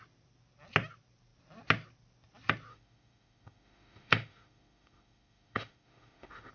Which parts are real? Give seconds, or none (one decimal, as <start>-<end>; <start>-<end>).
0.0-2.7